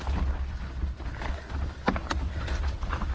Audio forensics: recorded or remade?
recorded